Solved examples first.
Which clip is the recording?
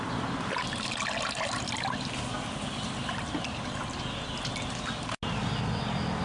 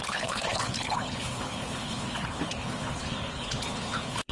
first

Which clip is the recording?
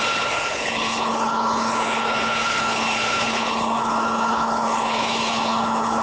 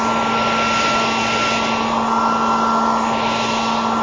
second